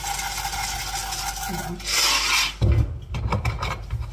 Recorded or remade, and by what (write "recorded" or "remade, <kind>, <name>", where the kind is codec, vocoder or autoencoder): recorded